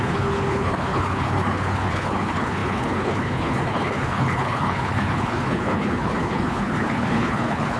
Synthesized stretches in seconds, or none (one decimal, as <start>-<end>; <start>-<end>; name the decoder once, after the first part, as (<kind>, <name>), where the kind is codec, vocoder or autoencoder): 0.0-7.8 (codec, HILCodec)